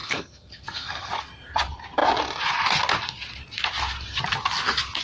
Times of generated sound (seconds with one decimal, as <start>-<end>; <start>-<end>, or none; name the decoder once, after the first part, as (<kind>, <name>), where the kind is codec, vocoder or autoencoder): 0.0-1.1 (codec, SNAC)